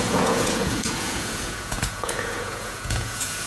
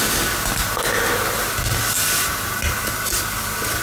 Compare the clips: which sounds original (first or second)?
second